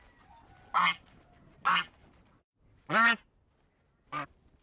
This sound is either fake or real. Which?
real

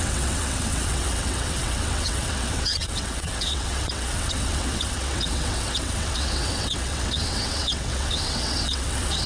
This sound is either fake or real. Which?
fake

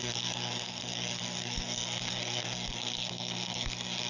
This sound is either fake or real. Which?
fake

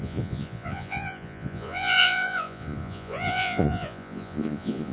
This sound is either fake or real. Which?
fake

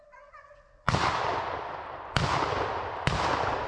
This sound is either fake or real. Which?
real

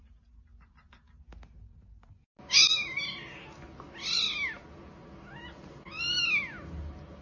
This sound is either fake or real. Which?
real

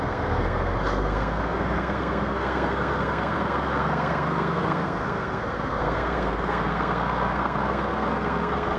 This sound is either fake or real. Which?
fake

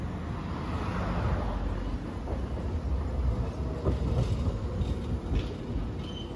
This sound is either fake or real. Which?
real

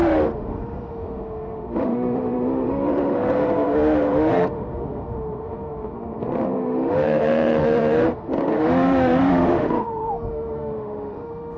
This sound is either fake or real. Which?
fake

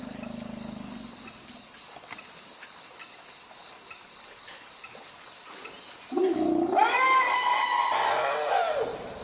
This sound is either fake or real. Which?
real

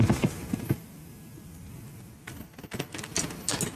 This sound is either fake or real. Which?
real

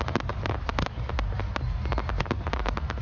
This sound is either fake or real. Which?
real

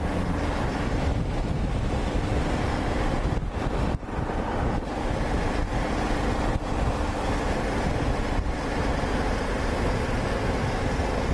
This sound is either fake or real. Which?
real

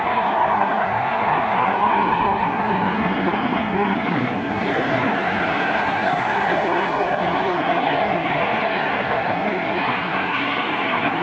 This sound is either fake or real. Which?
fake